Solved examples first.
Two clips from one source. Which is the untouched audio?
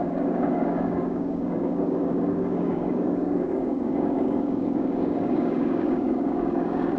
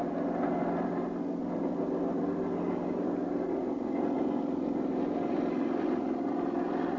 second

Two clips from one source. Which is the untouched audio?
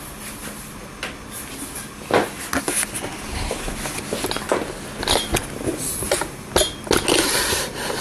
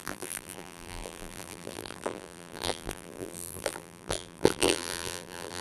first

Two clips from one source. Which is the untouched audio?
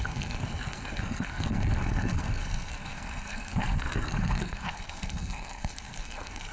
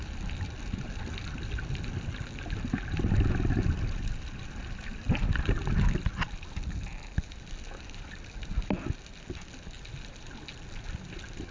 second